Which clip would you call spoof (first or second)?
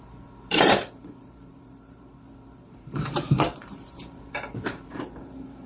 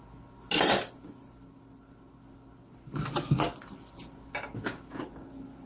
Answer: first